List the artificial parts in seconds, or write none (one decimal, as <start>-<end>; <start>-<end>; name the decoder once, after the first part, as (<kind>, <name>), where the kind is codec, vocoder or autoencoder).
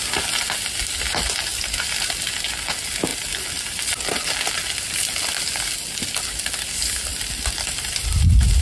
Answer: 3.1-4.3 (vocoder, BigVGAN v2); 7.1-8.2